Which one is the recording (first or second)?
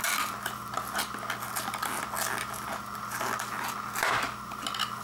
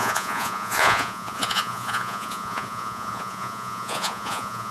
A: first